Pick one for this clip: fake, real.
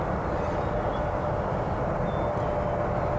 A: real